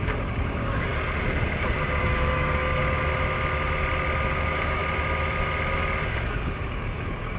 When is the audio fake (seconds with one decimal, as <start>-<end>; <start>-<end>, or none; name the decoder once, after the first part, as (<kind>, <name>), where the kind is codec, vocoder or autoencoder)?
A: 0.0-0.9 (codec, DAC); 2.0-2.8; 4.3-4.8; 6.1-7.4

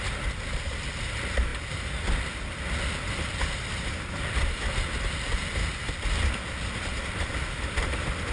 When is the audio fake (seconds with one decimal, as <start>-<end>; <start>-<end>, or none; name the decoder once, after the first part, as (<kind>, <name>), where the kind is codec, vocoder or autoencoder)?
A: none

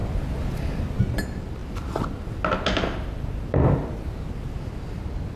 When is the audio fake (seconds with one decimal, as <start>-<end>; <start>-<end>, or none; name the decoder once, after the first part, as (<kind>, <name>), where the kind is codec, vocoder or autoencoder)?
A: none

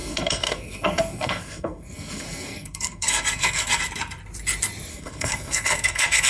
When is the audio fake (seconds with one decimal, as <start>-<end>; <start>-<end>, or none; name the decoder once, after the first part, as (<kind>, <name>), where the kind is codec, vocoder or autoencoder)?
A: 0.0-3.8 (codec, SNAC); 4.9-6.3

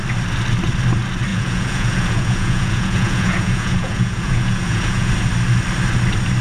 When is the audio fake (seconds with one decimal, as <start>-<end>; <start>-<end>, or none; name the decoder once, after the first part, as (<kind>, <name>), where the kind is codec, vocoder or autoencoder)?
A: 1.3-5.1 (vocoder, Vocos)

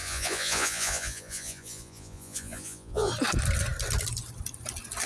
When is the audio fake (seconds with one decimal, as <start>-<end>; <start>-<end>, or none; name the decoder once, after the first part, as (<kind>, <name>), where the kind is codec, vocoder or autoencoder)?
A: 0.0-3.1 (vocoder, Vocos)